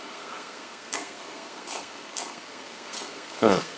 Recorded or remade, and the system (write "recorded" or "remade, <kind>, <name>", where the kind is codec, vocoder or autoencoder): remade, codec, SNAC